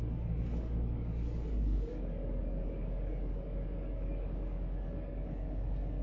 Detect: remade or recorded remade